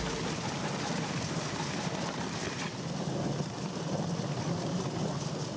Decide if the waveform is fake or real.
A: real